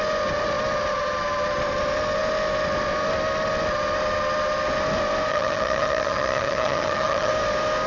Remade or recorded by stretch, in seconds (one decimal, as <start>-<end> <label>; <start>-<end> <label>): 0.0-5.3 recorded; 5.3-7.3 remade; 7.3-7.9 recorded